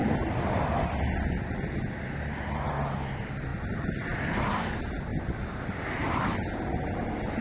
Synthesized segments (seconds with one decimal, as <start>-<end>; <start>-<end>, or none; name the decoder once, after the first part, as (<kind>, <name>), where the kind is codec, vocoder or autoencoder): 0.0-1.0 (vocoder, BigVGAN v2); 3.5-4.4; 5.1-6.5